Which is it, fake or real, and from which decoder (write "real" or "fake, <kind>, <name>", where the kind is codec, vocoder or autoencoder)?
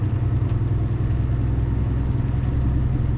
real